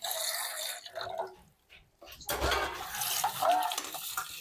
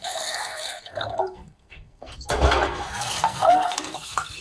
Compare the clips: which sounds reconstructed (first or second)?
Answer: second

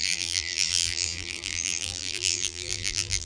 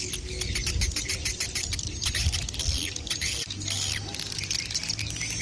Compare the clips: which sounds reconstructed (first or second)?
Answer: first